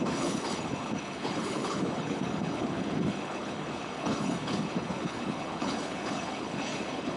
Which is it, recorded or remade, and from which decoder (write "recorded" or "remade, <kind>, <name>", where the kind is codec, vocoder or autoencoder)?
remade, codec, HILCodec